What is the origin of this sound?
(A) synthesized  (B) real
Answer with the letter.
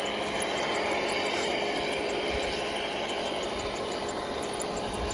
B